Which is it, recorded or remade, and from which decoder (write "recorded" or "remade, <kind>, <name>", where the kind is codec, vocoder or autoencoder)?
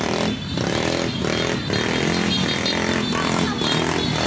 recorded